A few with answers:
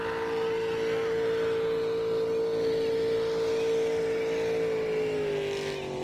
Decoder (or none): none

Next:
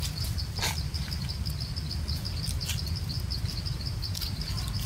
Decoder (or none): none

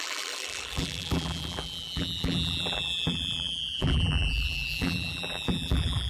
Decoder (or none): vocoder, BigVGAN v2